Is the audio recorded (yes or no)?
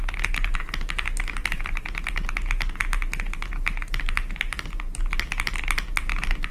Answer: yes